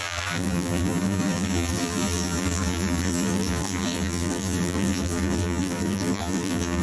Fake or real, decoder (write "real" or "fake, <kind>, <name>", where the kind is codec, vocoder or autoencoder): fake, vocoder, BigVGAN v2